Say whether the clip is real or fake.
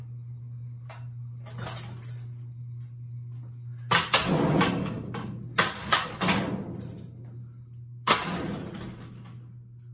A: real